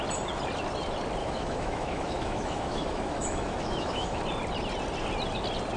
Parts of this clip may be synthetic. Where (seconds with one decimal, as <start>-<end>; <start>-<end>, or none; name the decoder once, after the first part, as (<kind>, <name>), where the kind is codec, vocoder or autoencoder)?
1.2-4.2 (autoencoder, DAC-VAE)